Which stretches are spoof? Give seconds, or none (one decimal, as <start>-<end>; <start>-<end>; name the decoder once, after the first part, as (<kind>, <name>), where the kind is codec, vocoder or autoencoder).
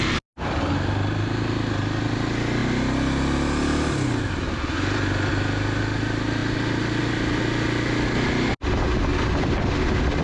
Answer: none